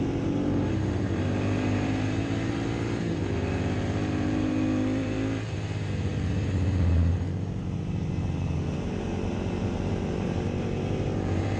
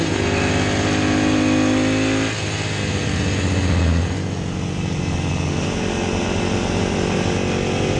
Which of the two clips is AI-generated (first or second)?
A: first